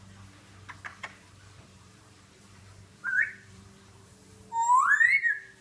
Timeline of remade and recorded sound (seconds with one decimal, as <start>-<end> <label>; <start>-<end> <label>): 0.0-0.9 recorded; 0.9-4.3 remade; 4.3-5.6 recorded